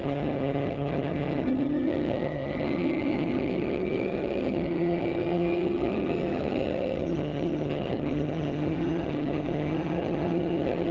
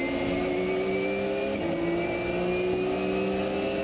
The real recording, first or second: second